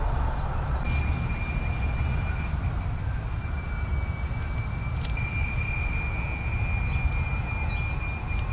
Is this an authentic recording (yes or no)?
yes